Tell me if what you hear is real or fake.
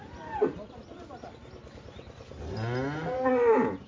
real